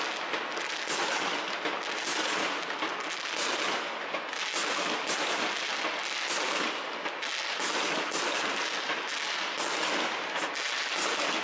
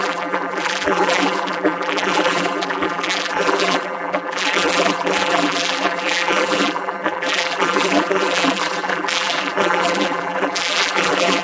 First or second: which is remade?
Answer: second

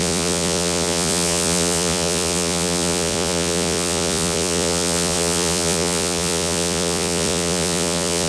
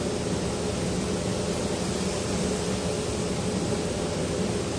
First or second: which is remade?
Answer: first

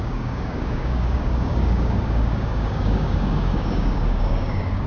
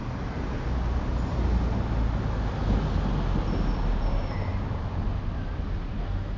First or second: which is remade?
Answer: first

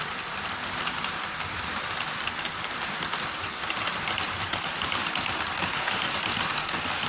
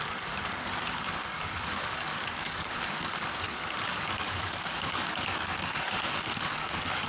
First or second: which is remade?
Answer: second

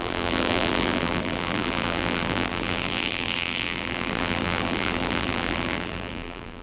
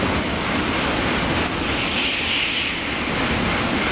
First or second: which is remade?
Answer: first